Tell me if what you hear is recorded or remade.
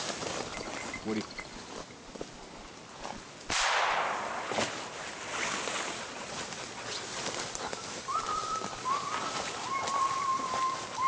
remade